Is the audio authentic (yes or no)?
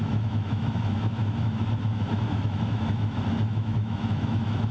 no